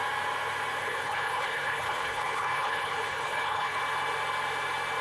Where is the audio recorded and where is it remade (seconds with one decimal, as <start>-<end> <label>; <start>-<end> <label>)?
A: 0.0-0.8 recorded; 0.8-3.8 remade; 3.8-5.0 recorded